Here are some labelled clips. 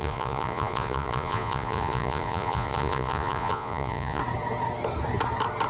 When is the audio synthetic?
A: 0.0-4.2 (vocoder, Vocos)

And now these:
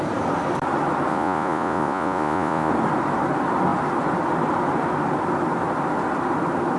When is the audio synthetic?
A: 1.1-2.7 (vocoder, Vocos)